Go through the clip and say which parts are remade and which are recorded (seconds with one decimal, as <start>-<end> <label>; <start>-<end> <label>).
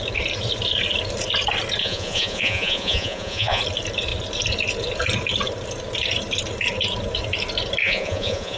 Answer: 0.0-1.8 recorded; 1.8-3.6 remade; 3.6-7.8 recorded; 7.8-8.6 remade